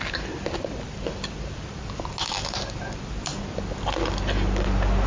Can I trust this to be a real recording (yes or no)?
yes